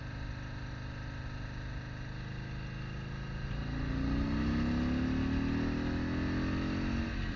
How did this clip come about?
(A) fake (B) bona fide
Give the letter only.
B